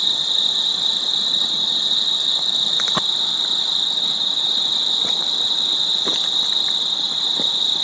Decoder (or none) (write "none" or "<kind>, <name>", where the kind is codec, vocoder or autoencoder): vocoder, BigVGAN v2